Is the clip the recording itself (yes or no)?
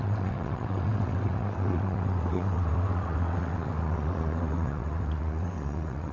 no